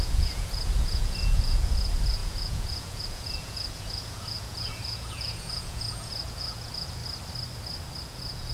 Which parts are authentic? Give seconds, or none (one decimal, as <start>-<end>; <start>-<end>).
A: 7.0-8.0